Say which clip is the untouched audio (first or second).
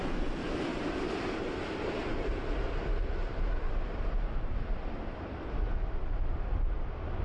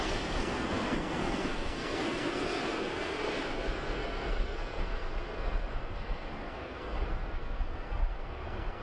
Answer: first